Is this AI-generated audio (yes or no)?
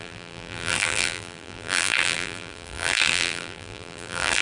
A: yes